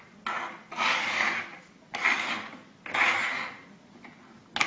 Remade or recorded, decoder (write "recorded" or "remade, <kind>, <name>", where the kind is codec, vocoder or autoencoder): recorded